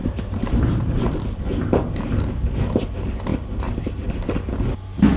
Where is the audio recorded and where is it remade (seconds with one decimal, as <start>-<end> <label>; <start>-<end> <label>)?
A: 0.0-1.4 remade; 1.4-5.2 recorded

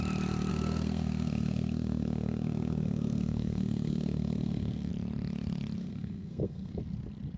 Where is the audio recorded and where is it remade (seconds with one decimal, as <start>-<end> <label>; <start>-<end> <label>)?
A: 0.0-0.5 recorded; 0.5-4.9 remade; 4.9-5.8 recorded; 5.8-6.8 remade; 6.8-7.4 recorded